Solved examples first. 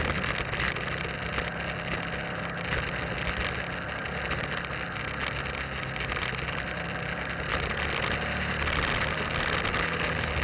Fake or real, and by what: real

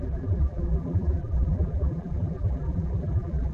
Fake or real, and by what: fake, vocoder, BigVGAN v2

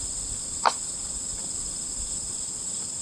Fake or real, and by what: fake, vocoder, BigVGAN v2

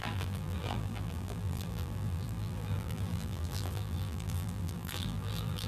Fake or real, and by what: fake, vocoder, BigVGAN v2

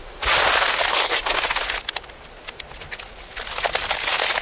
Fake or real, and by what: real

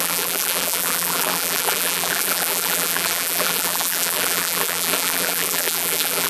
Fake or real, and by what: fake, vocoder, BigVGAN v2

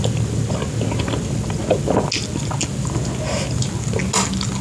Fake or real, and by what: real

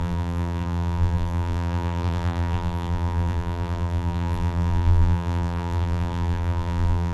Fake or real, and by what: fake, vocoder, BigVGAN v2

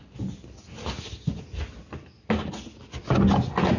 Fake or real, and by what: real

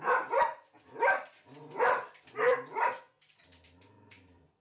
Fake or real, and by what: fake, vocoder, BigVGAN v2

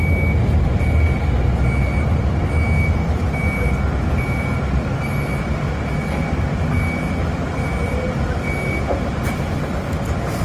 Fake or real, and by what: real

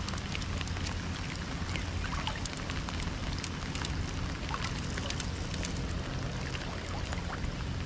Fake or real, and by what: real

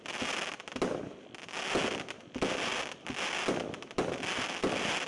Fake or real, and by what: real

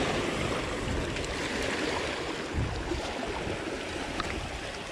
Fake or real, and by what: real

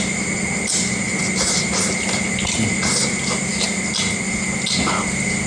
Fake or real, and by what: real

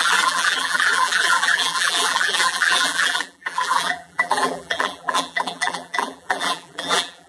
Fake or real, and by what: fake, vocoder, BigVGAN v2